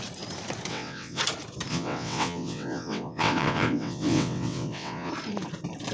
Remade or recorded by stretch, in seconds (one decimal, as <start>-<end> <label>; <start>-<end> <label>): 0.0-0.7 recorded; 0.7-1.2 remade; 1.2-1.7 recorded; 1.7-5.1 remade; 5.1-5.9 recorded